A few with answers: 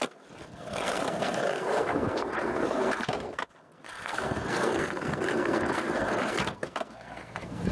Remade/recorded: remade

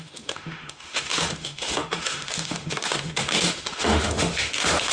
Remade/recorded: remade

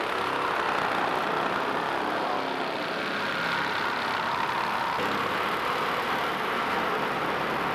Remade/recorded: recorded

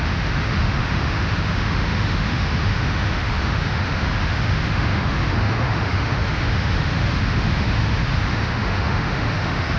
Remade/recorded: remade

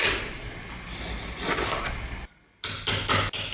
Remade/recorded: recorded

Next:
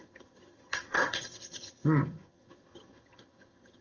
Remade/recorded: remade